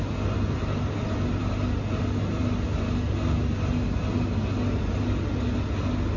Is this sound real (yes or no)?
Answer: yes